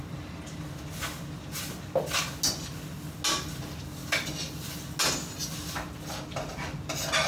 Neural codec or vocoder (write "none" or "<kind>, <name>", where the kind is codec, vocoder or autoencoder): none